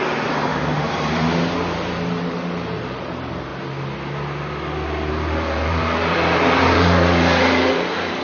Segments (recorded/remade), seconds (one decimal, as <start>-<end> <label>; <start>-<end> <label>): 0.0-3.5 remade; 3.5-5.1 recorded; 5.1-8.2 remade